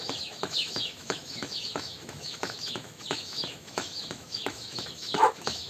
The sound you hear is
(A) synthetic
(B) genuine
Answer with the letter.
A